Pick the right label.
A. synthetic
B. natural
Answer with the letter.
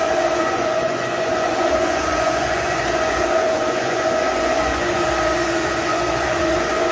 A